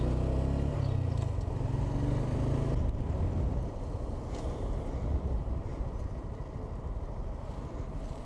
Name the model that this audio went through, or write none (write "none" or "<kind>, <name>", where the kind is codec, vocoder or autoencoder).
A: none